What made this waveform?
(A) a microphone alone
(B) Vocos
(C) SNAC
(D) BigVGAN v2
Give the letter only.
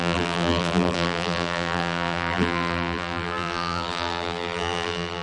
D